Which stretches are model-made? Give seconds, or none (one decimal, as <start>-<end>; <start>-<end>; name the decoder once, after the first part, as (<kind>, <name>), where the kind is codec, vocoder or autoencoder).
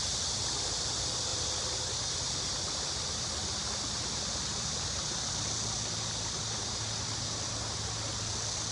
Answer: 4.5-5.3 (vocoder, BigVGAN v2)